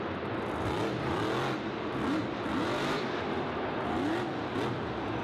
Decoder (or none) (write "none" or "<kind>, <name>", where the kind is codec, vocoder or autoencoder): none